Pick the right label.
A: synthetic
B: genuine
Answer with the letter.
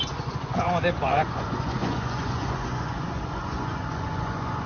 A